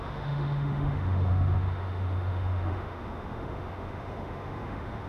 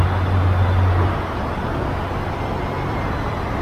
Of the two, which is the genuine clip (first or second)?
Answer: second